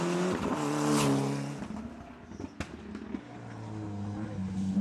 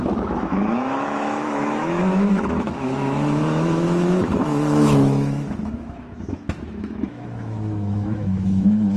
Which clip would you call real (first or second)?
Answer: first